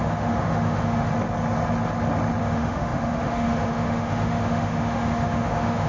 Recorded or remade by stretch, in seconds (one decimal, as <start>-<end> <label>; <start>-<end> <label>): 0.0-1.1 remade; 1.1-2.4 recorded; 2.4-5.9 remade